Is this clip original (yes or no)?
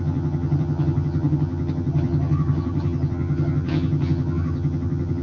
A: no